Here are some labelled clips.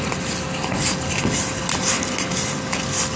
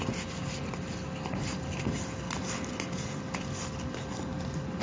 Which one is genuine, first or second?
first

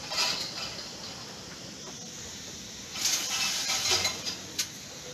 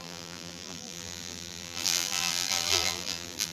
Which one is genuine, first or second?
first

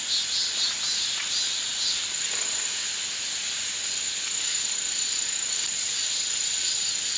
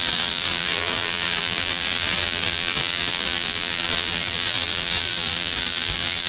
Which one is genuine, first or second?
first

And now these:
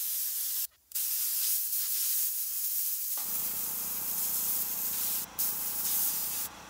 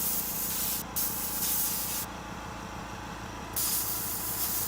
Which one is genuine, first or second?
second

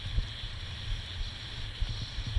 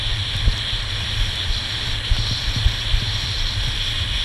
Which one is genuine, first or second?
second